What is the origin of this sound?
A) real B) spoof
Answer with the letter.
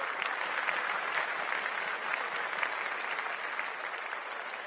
A